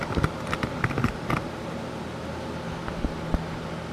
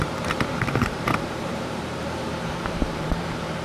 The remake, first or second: second